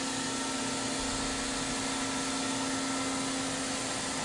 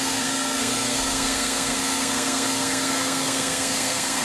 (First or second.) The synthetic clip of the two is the second